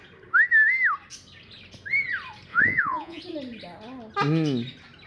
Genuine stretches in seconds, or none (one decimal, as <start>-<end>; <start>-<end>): 0.0-2.5; 3.2-5.1